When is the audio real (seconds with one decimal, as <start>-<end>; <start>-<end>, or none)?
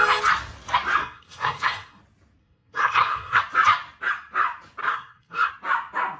0.0-1.0; 2.0-2.4; 3.4-4.8; 5.5-6.2